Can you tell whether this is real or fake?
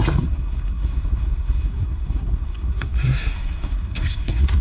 fake